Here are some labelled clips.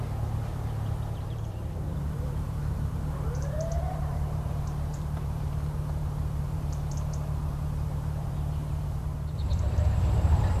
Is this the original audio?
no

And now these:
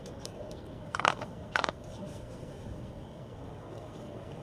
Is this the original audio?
no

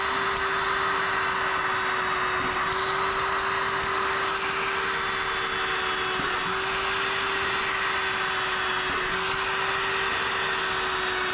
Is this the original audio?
yes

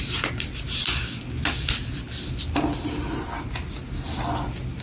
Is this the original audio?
yes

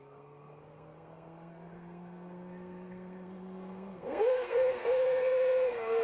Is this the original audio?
no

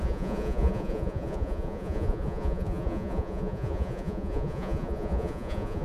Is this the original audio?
no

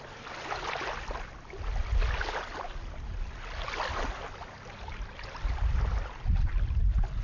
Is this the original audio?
yes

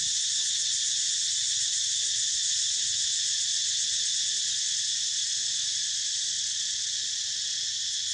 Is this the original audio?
yes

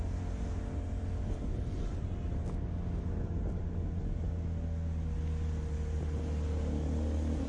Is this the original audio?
yes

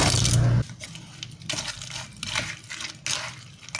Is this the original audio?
yes